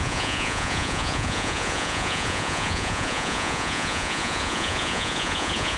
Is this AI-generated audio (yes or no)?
yes